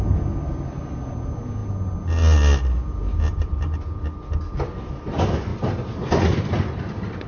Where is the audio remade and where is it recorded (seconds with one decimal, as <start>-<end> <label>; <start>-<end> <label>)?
0.0-5.5 recorded; 5.5-6.5 remade; 6.5-7.3 recorded